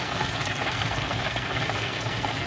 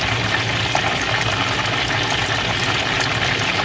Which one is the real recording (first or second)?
second